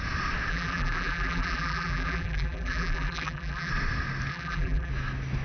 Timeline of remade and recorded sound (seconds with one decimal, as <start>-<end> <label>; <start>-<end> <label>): 0.0-0.5 recorded; 0.5-3.7 remade; 3.7-4.3 recorded; 4.3-4.9 remade; 4.9-5.4 recorded